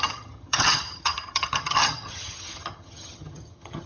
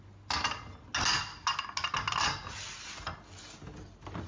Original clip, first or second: second